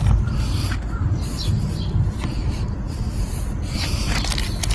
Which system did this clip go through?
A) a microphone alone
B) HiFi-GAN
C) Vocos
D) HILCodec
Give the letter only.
A